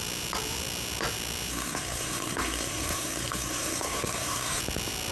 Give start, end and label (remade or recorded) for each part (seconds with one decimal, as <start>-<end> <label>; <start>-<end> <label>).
0.0-1.5 recorded; 1.5-4.6 remade; 4.6-5.1 recorded